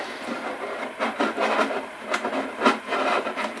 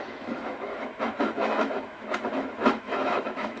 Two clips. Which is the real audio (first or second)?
first